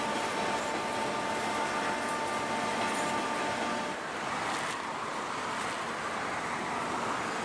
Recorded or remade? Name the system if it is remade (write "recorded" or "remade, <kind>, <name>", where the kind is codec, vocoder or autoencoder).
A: recorded